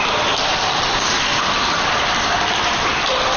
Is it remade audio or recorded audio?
recorded